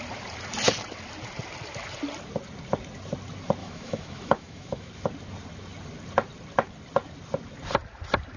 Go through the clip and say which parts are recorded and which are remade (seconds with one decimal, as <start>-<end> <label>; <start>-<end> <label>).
0.0-3.6 recorded; 3.6-4.9 remade; 4.9-8.4 recorded